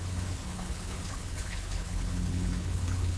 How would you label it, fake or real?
fake